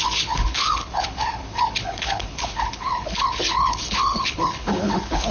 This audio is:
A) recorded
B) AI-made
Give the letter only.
B